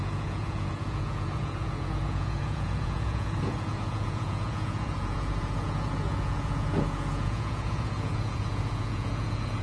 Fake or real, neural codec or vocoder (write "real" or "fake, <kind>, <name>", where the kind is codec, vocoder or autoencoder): fake, vocoder, Vocos